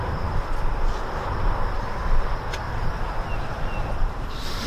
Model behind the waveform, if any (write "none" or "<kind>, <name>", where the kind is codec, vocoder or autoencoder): none